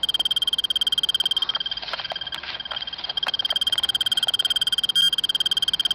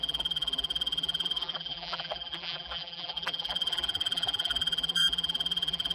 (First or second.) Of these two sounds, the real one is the first